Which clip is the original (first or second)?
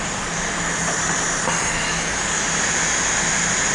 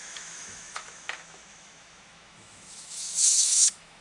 first